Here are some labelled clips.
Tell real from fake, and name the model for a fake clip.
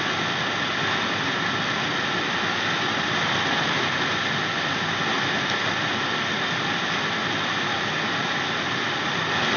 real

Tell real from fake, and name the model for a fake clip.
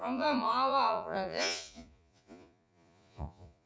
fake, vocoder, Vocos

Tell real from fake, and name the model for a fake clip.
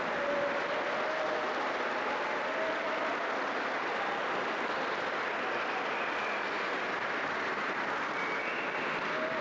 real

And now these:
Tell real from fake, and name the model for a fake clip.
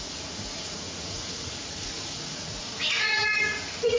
fake, vocoder, Vocos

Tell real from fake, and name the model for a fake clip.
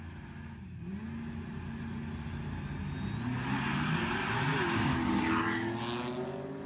real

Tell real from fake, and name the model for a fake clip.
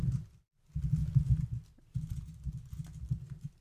real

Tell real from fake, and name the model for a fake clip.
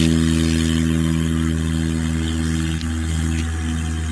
real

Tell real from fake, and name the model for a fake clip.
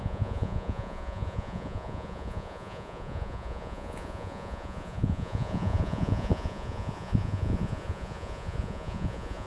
fake, vocoder, Vocos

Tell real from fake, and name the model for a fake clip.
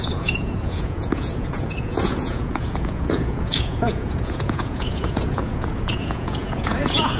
fake, vocoder, Vocos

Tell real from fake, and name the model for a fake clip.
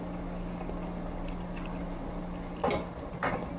real